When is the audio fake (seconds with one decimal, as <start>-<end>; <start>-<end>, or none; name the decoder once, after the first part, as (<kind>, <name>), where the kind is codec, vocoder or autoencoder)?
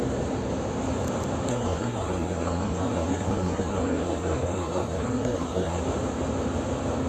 1.5-5.8 (codec, SNAC)